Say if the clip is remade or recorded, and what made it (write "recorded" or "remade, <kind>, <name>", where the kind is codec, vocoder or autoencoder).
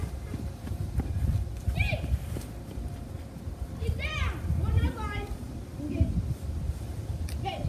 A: remade, vocoder, BigVGAN v2